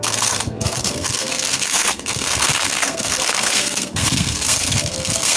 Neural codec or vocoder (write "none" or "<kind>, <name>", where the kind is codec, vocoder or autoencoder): codec, SNAC